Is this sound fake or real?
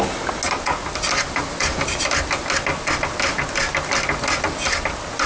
real